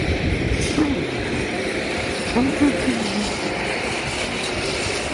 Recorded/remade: recorded